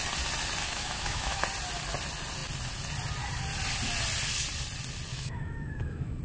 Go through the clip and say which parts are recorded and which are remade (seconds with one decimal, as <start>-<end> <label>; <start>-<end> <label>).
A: 0.0-0.6 recorded; 0.6-1.4 remade; 1.4-5.1 recorded; 5.1-6.2 remade